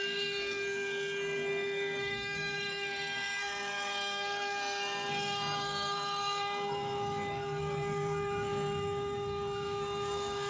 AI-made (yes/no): yes